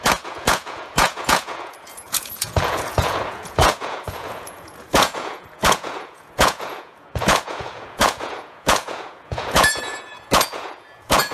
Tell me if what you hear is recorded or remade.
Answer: remade